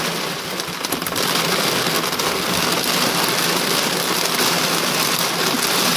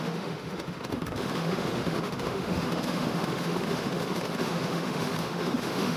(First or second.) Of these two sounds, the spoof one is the second